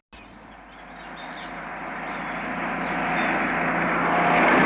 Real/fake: real